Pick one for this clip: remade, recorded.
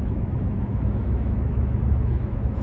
remade